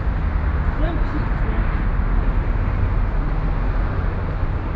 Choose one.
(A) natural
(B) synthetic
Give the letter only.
A